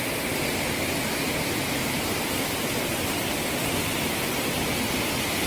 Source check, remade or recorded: recorded